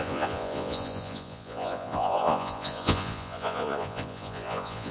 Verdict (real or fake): fake